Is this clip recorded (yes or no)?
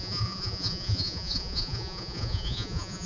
no